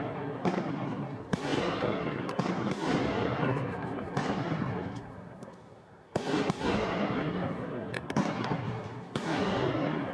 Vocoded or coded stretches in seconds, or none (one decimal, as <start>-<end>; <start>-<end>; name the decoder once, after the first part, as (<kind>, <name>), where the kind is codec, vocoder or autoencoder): 0.0-10.1 (codec, SNAC)